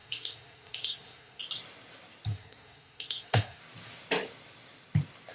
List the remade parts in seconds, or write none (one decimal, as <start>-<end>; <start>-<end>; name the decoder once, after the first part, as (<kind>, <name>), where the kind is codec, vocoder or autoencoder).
0.0-1.4 (codec, SNAC); 2.3-3.6